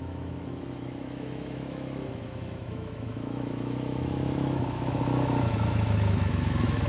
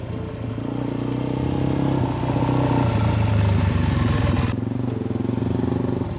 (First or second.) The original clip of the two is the second